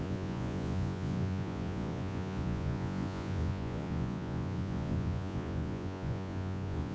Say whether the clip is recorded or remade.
remade